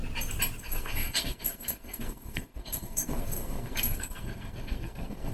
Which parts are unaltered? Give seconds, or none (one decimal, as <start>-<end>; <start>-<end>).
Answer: 0.0-0.6